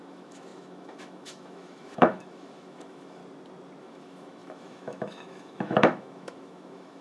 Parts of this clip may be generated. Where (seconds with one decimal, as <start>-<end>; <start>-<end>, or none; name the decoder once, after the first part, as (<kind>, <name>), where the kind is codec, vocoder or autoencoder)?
0.0-3.2 (autoencoder, DAC-VAE); 3.8-7.0